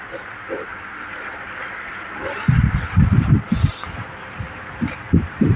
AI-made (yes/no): yes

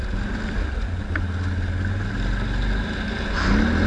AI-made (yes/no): no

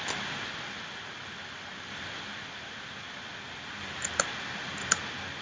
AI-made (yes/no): no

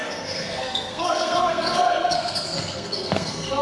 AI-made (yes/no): yes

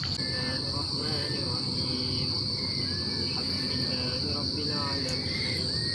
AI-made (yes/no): no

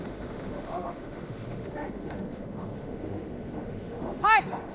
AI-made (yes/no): yes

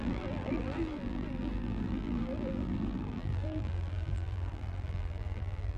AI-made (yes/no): yes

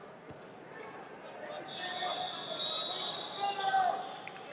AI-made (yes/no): no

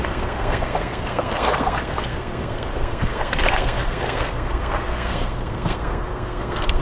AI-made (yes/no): yes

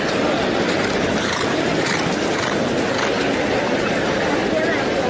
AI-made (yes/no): no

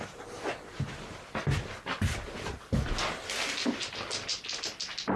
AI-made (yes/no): no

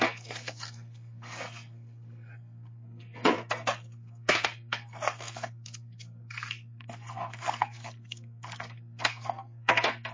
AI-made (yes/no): yes